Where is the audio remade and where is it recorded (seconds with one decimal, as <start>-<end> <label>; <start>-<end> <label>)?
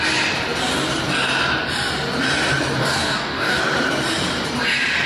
0.0-2.8 recorded; 2.8-3.6 remade; 3.6-5.1 recorded